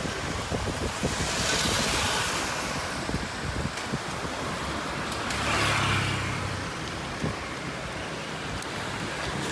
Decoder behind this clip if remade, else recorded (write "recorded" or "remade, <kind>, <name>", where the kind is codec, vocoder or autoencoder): recorded